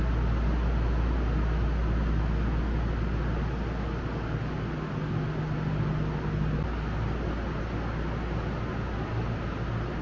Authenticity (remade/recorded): recorded